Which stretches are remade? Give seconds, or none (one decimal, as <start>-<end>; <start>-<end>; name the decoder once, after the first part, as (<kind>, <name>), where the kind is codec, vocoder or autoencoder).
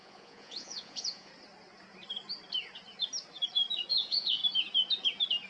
0.0-1.3 (vocoder, Vocos); 3.9-4.4